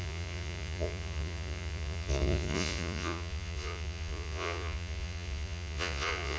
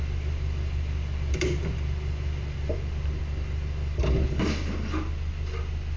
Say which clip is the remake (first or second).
first